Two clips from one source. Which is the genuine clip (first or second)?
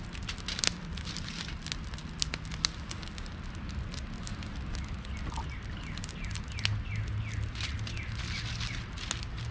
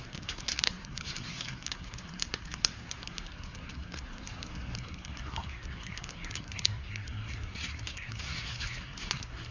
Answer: first